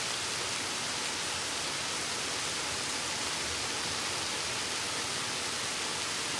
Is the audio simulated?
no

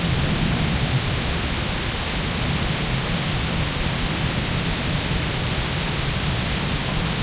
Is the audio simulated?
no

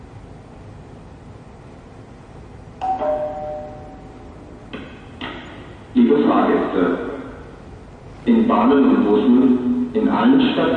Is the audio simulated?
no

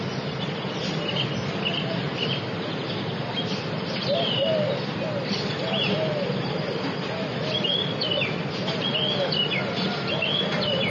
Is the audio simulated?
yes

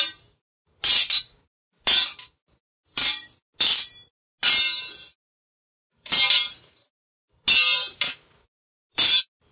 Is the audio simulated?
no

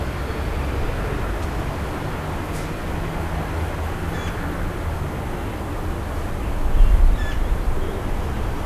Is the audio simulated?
no